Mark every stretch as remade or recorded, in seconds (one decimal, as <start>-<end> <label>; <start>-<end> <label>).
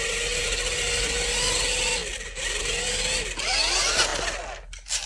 0.0-5.1 recorded